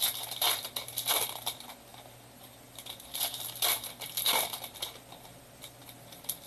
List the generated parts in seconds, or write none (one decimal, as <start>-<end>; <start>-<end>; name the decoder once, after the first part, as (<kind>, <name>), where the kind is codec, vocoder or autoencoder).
none